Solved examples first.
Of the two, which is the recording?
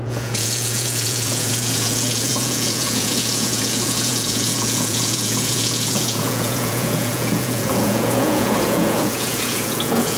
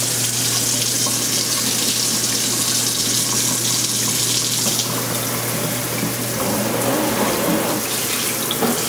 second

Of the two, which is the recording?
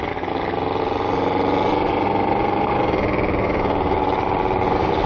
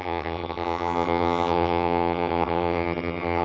first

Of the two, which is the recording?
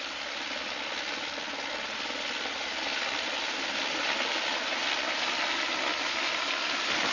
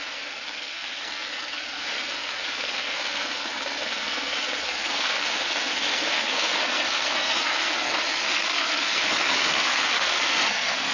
first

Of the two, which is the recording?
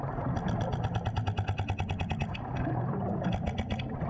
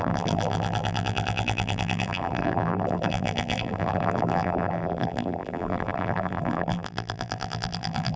first